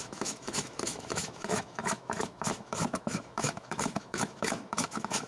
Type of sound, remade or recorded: remade